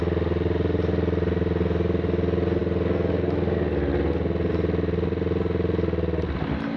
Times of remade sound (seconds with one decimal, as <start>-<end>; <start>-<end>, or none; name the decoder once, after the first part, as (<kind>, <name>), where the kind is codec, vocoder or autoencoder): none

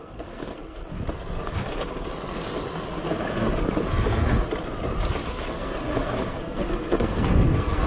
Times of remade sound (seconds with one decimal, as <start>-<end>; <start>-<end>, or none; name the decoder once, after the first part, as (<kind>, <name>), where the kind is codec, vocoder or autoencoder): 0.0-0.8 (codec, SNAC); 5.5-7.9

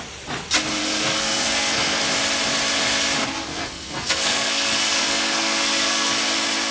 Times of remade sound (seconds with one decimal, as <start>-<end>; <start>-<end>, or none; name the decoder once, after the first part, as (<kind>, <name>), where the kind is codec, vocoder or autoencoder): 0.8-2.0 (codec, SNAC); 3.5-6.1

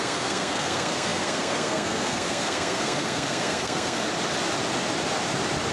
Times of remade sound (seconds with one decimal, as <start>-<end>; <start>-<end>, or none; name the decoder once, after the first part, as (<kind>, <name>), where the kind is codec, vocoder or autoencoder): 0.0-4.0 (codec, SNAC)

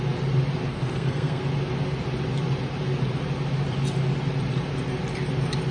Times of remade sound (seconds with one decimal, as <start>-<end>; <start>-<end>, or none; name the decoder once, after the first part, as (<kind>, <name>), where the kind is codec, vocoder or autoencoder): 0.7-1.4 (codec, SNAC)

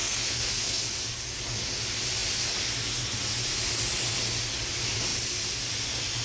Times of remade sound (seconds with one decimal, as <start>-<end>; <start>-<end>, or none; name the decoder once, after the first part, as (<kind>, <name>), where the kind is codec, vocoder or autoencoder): 0.0-0.8 (codec, SNAC)

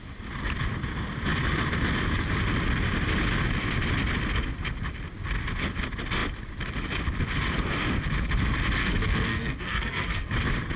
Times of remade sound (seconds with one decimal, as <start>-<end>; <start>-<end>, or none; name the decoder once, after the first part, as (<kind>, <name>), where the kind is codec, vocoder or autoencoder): 8.8-10.3 (codec, SNAC)